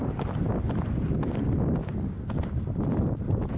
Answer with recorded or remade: recorded